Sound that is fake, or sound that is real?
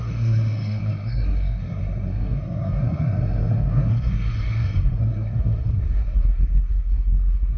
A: fake